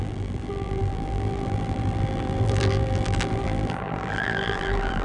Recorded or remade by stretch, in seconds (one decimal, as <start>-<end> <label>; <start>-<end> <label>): 0.0-5.0 remade